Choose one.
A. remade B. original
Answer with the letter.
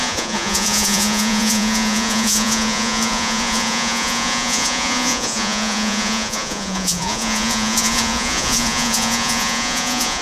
A